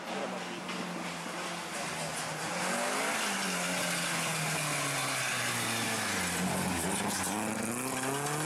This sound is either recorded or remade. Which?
recorded